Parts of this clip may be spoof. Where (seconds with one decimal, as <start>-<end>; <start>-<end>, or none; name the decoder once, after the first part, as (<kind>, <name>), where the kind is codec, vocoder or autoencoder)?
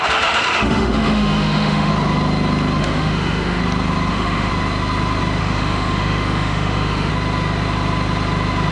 0.0-1.9 (autoencoder, DAC-VAE); 2.8-3.6; 4.1-4.5; 5.4-7.1